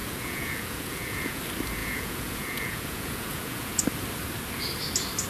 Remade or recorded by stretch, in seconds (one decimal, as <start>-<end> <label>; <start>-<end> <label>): 0.0-1.4 remade; 1.4-1.8 recorded; 1.8-3.8 remade; 3.8-5.3 recorded